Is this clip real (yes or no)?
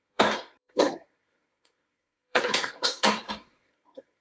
no